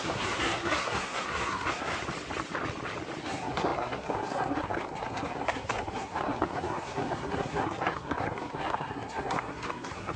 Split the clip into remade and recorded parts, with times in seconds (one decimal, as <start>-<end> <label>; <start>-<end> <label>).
0.0-1.9 remade; 1.9-3.2 recorded; 3.2-10.2 remade

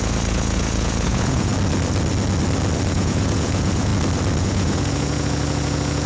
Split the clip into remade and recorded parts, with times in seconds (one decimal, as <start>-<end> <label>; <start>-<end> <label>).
0.0-1.5 remade; 1.5-2.9 recorded; 2.9-3.9 remade; 3.9-4.4 recorded; 4.4-6.1 remade

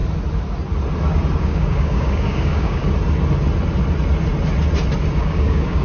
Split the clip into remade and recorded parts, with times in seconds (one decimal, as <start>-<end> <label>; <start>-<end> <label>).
0.0-1.4 recorded; 1.4-2.8 remade; 2.8-5.2 recorded; 5.2-5.8 remade

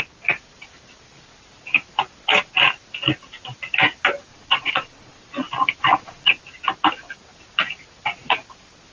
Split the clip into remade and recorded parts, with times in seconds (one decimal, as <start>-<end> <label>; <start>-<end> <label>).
0.0-4.3 recorded; 4.3-5.2 remade; 5.2-5.8 recorded; 5.8-6.3 remade; 6.3-8.9 recorded

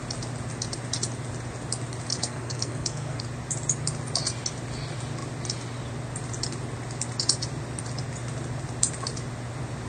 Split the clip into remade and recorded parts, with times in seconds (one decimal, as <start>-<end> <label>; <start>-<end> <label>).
0.0-2.1 recorded; 2.1-3.2 remade; 3.2-9.9 recorded

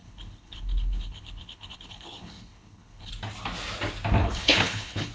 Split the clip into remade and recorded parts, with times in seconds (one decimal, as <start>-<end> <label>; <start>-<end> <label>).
0.0-3.1 remade; 3.1-4.2 recorded; 4.2-5.1 remade

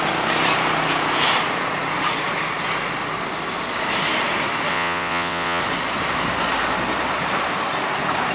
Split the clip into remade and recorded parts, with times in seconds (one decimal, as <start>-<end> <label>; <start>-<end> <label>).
0.0-4.7 recorded; 4.7-5.6 remade; 5.6-8.3 recorded

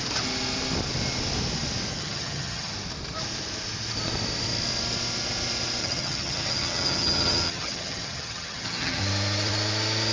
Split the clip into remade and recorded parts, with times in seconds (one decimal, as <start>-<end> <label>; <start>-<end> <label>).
0.0-1.9 recorded; 1.9-2.7 remade; 2.7-5.8 recorded; 5.8-9.0 remade; 9.0-10.1 recorded